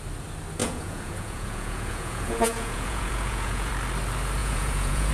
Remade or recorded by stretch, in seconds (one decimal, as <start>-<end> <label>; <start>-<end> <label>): 0.0-0.6 recorded; 0.6-3.7 remade; 3.7-4.4 recorded; 4.4-5.1 remade